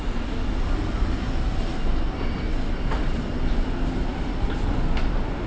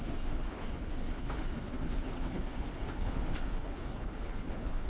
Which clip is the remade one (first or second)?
second